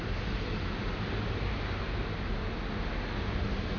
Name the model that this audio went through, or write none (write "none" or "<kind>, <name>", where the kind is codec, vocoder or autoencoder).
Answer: none